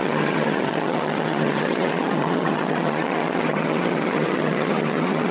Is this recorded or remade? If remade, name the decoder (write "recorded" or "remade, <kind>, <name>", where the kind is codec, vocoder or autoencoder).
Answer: remade, vocoder, HiFi-GAN